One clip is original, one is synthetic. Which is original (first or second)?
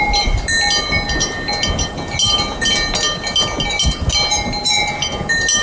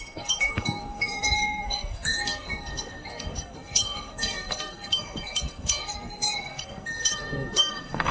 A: first